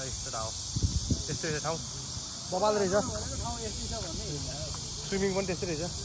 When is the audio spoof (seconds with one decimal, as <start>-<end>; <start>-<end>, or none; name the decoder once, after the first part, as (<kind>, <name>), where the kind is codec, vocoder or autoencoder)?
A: none